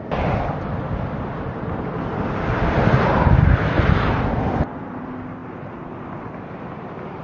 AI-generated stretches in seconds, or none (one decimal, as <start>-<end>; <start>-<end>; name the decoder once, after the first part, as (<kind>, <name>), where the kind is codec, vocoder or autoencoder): none